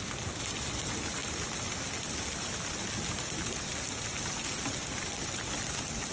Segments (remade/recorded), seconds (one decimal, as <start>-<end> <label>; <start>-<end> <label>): 0.0-6.1 recorded